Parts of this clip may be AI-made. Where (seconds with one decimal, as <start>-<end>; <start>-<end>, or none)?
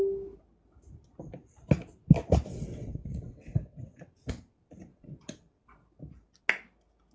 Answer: 2.5-4.3; 4.9-5.6